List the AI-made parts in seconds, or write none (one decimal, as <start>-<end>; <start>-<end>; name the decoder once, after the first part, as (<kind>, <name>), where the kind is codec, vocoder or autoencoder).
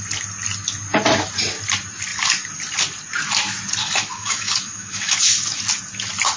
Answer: 3.8-5.2 (autoencoder, DAC-VAE)